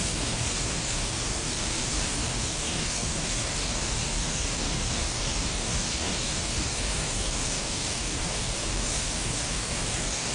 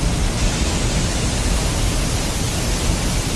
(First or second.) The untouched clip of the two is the second